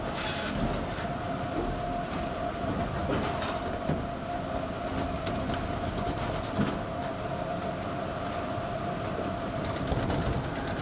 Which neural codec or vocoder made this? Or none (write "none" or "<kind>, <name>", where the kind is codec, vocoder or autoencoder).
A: none